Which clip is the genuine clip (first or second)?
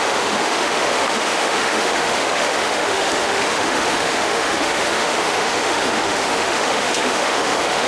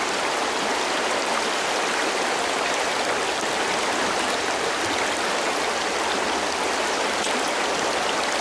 second